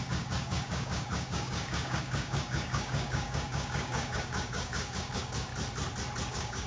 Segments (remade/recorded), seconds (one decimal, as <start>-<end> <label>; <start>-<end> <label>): 0.0-5.5 remade; 5.5-6.3 recorded; 6.3-6.7 remade